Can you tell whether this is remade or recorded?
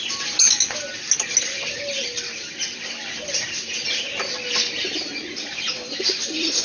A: recorded